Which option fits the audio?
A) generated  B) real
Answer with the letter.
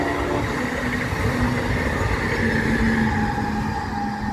B